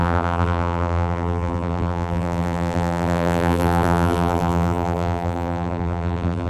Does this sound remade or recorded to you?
remade